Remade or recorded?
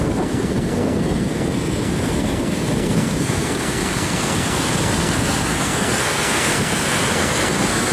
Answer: remade